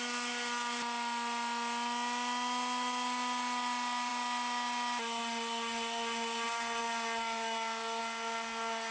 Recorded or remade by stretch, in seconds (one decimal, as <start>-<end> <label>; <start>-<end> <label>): 0.0-8.9 recorded